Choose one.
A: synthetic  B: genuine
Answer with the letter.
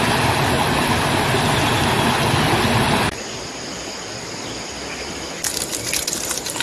B